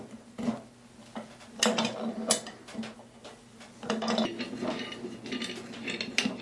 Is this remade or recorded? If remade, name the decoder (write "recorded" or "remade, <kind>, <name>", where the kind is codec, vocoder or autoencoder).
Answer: recorded